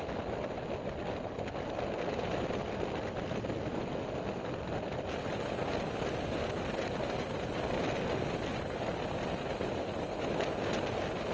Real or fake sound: real